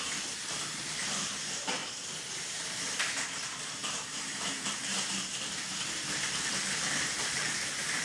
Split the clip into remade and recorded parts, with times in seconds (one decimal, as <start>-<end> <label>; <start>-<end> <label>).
0.0-1.8 remade; 1.8-2.4 recorded; 2.4-8.0 remade